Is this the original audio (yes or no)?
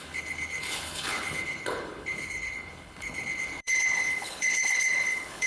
no